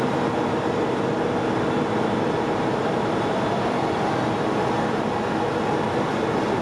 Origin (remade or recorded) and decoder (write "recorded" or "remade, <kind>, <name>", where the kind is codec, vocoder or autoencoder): recorded